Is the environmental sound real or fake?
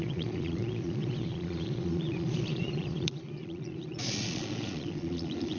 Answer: fake